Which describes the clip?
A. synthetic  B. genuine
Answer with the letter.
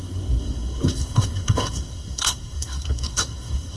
A